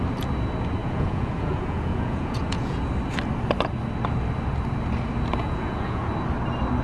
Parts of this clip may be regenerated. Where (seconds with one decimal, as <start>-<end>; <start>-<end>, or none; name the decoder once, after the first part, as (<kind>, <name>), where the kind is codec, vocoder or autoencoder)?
0.8-2.8 (vocoder, Vocos); 5.4-6.1

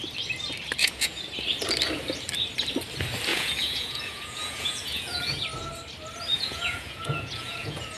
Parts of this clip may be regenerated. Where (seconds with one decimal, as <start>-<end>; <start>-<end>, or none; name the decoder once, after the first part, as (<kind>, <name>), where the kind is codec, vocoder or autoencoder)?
0.8-1.3 (vocoder, Vocos); 3.3-5.4; 6.3-8.0

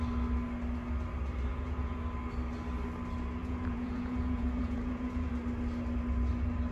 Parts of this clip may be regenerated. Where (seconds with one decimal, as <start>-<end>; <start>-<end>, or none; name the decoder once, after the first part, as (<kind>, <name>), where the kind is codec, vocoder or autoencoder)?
1.5-2.0 (vocoder, Vocos); 3.4-5.3

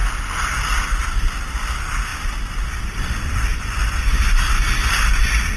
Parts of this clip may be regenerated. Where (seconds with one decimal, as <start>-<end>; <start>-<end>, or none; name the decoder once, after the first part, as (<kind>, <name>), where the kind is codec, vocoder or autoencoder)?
3.5-4.6 (vocoder, Vocos)

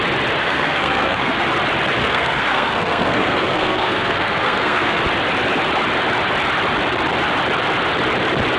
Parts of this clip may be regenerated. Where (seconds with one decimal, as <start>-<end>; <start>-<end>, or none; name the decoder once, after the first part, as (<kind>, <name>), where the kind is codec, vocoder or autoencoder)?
0.4-1.4 (codec, SNAC); 2.0-5.0

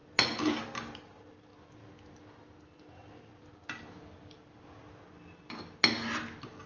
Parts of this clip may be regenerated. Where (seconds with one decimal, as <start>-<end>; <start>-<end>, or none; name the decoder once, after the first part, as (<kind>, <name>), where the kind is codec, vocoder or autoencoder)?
none